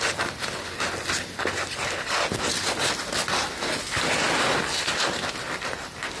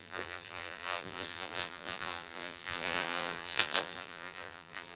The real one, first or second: first